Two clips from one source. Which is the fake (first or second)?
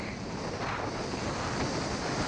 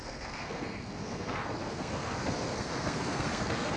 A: second